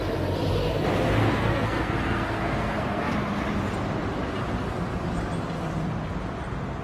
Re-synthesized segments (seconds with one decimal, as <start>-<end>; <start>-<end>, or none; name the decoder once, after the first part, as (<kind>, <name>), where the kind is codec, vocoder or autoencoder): 1.2-3.1 (codec, SNAC)